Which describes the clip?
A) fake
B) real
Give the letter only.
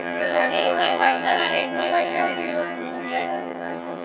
A